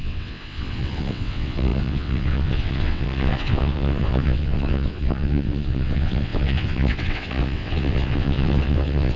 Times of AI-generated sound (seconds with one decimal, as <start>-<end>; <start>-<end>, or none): 0.0-9.2